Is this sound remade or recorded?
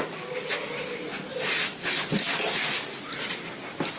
recorded